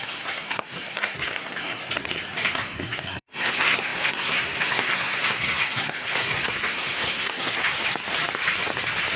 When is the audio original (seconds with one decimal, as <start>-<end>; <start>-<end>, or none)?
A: 7.6-9.2